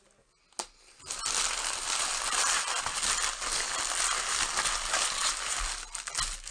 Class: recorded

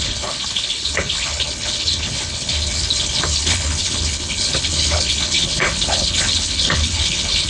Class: remade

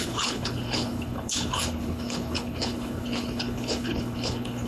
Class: remade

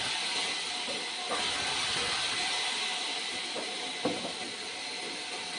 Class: recorded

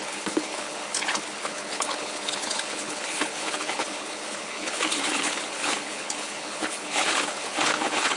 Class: remade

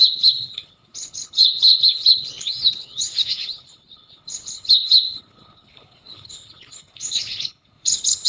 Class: remade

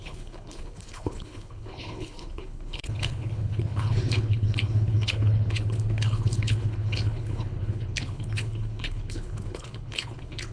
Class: remade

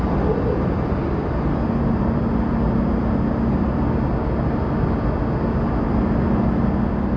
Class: recorded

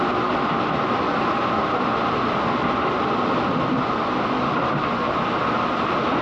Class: recorded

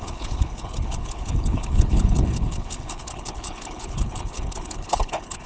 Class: remade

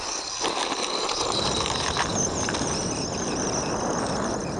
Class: recorded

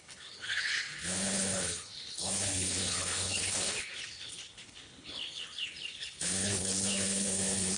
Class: remade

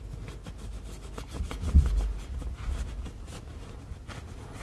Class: recorded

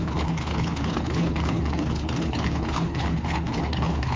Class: remade